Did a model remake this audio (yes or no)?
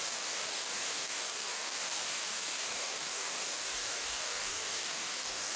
yes